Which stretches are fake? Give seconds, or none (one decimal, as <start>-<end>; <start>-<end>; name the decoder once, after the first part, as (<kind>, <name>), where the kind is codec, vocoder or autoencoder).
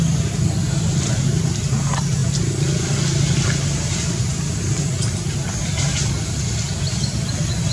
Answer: none